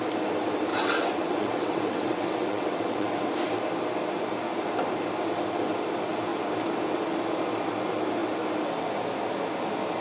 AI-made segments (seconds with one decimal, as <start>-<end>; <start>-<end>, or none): 0.7-3.3